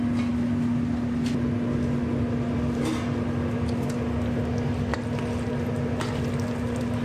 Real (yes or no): yes